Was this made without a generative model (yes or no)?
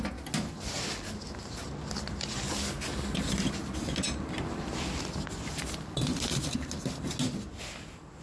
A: yes